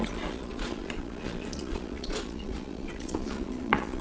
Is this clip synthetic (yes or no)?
yes